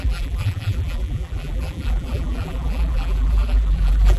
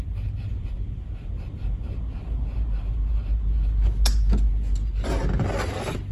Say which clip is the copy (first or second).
first